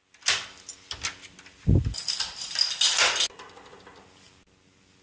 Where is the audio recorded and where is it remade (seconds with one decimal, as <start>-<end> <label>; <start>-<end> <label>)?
0.0-5.0 recorded